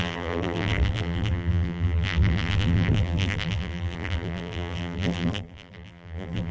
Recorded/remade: remade